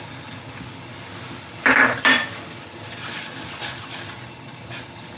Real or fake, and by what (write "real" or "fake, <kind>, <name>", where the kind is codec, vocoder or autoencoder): real